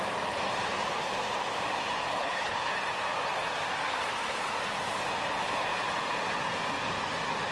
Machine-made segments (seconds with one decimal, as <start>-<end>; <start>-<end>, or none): 2.1-2.7